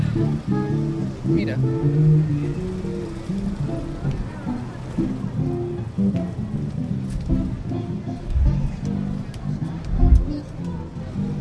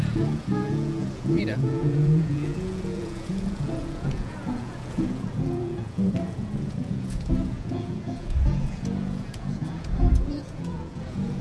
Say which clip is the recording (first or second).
first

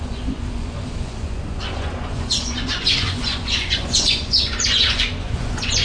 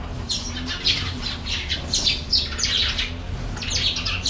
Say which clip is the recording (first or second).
second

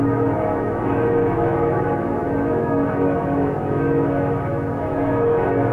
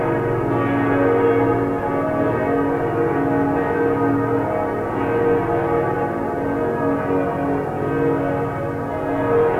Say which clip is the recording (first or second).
second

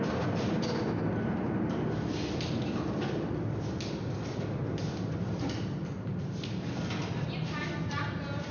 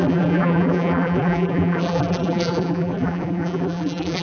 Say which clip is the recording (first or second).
first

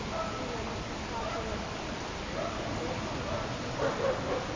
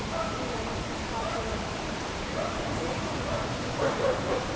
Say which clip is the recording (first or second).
first